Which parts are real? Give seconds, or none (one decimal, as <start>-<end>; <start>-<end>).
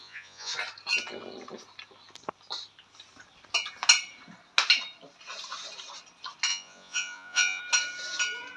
0.5-6.5; 7.6-8.6